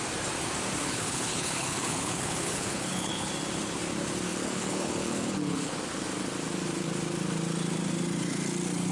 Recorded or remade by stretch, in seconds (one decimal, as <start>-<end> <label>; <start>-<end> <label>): 0.0-0.8 recorded; 0.8-3.3 remade; 3.3-4.3 recorded; 4.3-5.7 remade; 5.7-8.9 recorded